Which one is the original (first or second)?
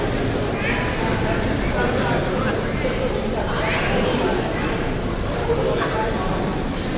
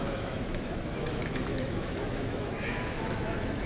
first